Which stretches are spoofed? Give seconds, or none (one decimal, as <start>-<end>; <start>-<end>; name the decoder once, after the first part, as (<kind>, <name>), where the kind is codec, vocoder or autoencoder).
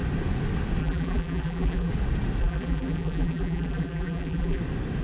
0.8-1.9 (vocoder, BigVGAN v2); 2.4-4.6